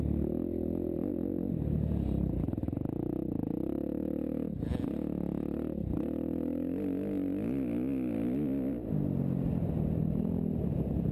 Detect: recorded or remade recorded